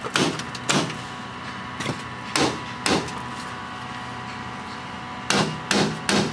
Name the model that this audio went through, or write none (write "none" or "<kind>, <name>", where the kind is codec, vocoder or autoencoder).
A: none